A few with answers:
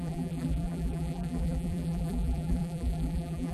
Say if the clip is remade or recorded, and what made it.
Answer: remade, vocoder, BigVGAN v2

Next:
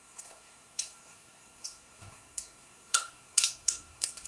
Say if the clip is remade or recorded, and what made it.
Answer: remade, codec, SNAC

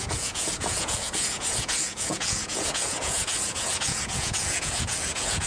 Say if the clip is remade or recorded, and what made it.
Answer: remade, vocoder, Vocos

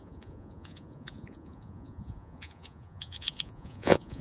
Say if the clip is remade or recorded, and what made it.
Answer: remade, vocoder, Vocos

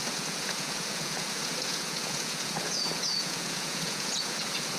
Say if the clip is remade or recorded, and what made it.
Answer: remade, vocoder, Vocos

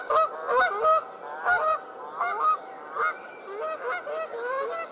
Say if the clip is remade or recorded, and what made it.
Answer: recorded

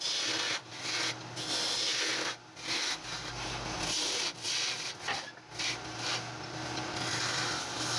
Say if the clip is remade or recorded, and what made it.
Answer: recorded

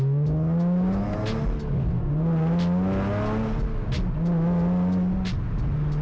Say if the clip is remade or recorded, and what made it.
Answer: recorded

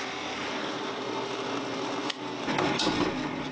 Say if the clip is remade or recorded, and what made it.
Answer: recorded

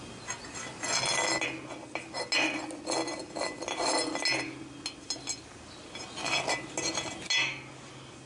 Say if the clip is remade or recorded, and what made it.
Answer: recorded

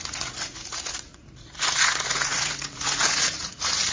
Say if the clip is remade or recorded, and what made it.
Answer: remade, vocoder, Vocos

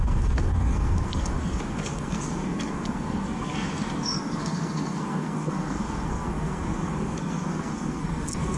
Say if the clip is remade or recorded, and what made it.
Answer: remade, codec, SNAC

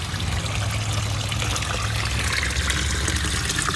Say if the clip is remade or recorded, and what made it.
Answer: recorded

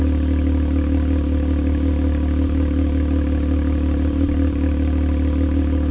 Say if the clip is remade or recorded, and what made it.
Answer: recorded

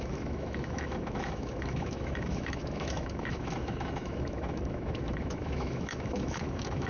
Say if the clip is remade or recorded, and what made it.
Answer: remade, autoencoder, DAC-VAE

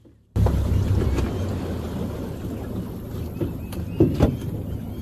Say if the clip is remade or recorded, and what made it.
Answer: recorded